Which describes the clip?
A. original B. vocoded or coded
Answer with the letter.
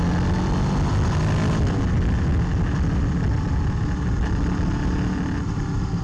A